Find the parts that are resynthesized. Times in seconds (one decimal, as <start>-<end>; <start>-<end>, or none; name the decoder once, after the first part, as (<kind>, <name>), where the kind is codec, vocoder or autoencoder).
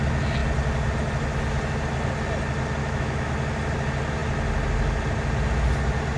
2.8-3.3 (autoencoder, DAC-VAE)